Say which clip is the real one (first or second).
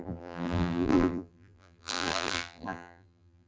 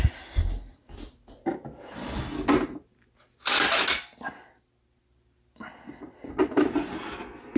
second